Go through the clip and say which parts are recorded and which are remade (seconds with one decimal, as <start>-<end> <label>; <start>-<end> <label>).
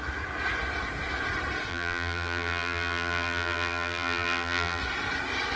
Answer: 0.0-1.7 recorded; 1.7-4.8 remade; 4.8-5.6 recorded